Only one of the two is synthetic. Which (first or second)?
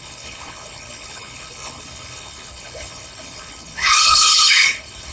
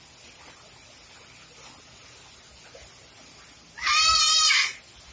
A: first